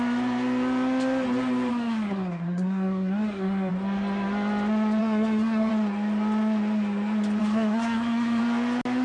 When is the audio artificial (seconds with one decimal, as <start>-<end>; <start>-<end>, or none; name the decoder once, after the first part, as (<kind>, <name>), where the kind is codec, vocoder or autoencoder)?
1.7-3.7 (codec, SNAC); 5.0-5.7; 7.4-8.4

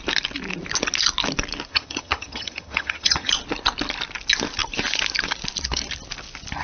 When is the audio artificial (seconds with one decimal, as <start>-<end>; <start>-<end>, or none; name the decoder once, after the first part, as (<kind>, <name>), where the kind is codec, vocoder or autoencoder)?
1.7-3.3 (vocoder, HiFi-GAN)